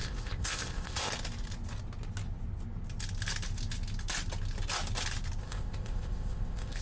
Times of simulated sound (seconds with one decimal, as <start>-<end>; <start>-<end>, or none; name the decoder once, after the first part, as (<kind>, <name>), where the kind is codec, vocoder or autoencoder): 0.0-1.1 (codec, ZipCodec); 5.4-6.8